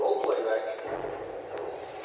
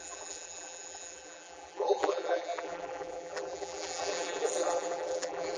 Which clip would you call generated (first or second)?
second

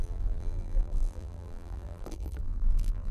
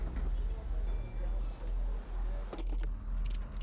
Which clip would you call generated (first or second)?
first